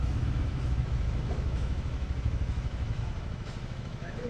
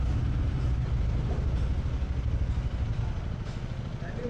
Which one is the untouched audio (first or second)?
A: second